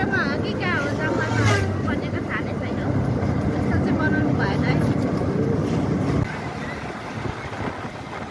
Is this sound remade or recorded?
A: recorded